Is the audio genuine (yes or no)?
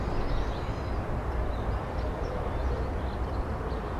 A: yes